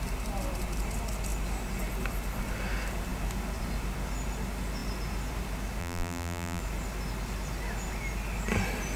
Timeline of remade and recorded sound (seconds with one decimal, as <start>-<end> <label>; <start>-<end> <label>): 0.0-5.8 recorded; 5.8-6.6 remade; 6.6-9.0 recorded